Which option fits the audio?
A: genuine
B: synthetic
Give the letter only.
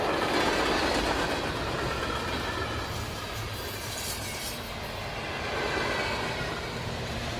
A